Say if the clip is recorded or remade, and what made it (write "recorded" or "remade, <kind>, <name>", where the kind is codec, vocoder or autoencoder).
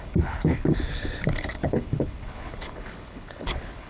remade, codec, HILCodec